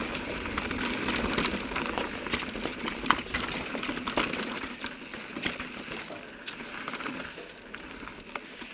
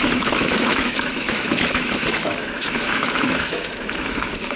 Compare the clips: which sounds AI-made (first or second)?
second